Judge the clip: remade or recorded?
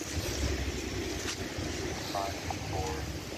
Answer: recorded